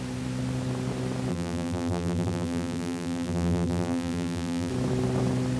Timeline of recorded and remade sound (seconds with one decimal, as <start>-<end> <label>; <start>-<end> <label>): 0.0-1.3 recorded; 1.3-4.7 remade; 4.7-5.6 recorded